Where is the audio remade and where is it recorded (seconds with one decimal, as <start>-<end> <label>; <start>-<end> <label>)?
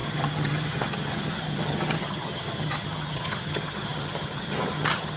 0.0-5.2 remade